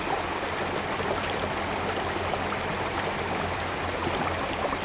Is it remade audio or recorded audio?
recorded